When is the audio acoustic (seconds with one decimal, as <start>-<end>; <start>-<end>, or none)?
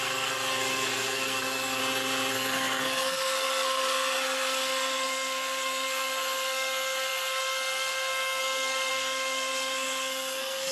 1.8-2.3